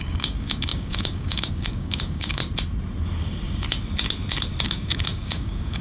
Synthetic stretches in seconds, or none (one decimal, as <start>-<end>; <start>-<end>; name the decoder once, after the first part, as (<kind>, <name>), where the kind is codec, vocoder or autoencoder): 0.0-2.4 (codec, DAC); 4.6-5.8